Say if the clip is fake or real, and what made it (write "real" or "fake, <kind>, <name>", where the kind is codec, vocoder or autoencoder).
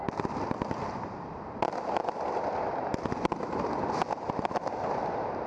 real